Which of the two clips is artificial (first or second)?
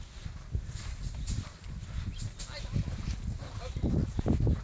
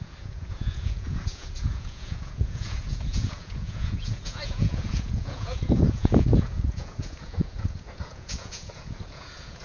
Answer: second